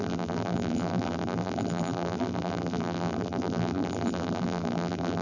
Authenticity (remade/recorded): remade